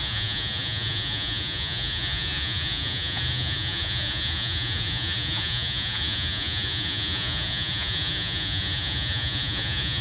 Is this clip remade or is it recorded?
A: remade